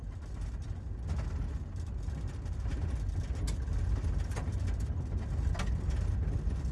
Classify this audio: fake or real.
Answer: real